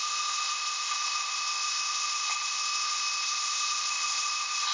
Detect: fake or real fake